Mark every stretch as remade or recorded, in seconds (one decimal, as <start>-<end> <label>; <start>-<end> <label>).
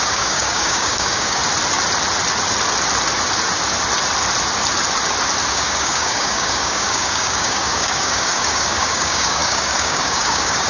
0.0-1.4 remade; 1.4-5.5 recorded; 5.5-10.7 remade